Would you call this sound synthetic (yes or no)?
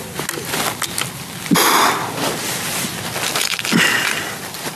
no